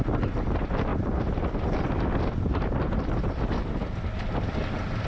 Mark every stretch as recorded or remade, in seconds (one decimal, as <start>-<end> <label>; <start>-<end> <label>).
0.0-5.1 recorded